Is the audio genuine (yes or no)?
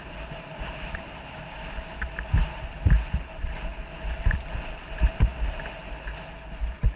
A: yes